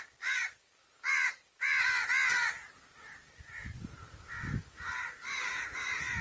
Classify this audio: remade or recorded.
recorded